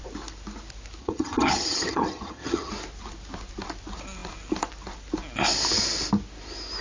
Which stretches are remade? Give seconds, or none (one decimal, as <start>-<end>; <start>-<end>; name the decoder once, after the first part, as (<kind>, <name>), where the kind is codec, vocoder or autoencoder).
1.0-2.7 (vocoder, HiFi-GAN)